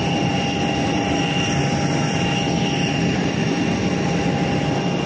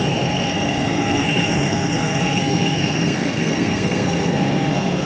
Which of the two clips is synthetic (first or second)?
second